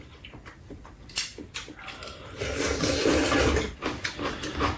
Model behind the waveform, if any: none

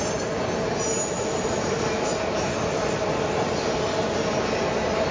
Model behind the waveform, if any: none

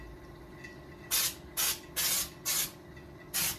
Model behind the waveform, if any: none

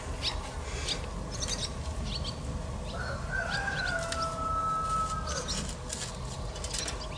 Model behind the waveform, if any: none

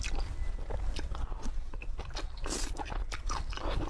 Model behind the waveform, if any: none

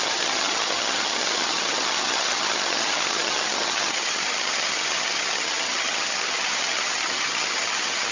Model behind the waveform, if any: vocoder, HiFi-GAN